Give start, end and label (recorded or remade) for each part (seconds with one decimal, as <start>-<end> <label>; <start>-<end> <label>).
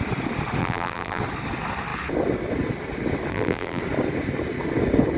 0.0-0.6 recorded; 0.6-1.2 remade; 1.2-3.3 recorded; 3.3-3.8 remade; 3.8-5.2 recorded